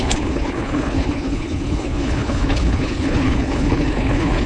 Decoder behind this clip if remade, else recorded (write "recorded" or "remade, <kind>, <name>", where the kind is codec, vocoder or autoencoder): remade, codec, HILCodec